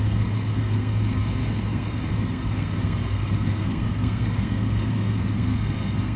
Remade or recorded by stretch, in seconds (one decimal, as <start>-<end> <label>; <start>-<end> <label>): 0.0-6.2 remade